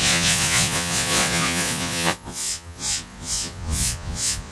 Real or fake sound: fake